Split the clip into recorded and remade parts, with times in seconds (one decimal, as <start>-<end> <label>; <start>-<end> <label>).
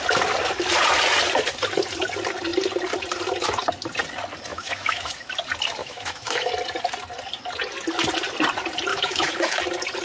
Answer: 0.0-4.5 recorded; 4.5-5.3 remade; 5.3-5.8 recorded; 5.8-6.5 remade; 6.5-8.9 recorded; 8.9-9.6 remade; 9.6-10.0 recorded